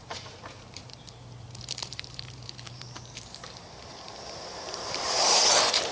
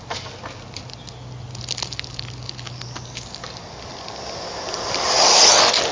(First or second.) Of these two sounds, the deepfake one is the first